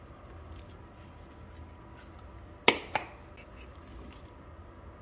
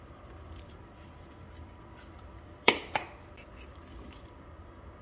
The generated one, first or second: second